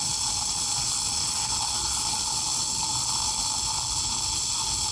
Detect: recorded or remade recorded